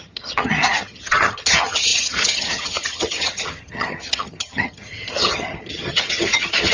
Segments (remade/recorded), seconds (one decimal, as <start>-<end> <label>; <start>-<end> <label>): 0.0-6.7 remade